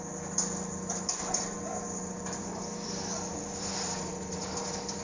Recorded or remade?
recorded